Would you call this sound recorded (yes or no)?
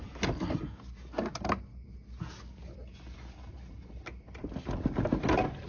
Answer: yes